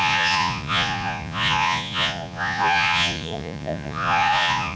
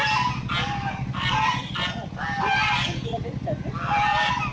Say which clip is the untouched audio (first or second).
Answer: second